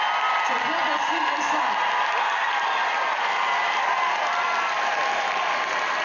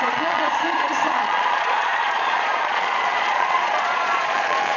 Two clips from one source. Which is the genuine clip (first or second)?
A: first